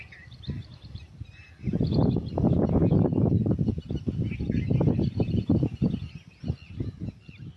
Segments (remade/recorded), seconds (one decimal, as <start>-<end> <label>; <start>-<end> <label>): 0.0-0.6 recorded; 0.6-1.7 remade; 1.7-7.6 recorded